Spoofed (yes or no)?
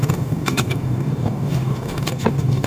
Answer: yes